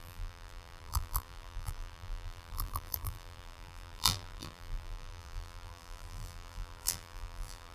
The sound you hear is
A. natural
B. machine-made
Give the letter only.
B